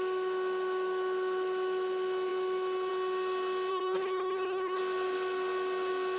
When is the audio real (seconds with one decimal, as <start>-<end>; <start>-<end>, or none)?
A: 0.0-3.7; 4.8-6.2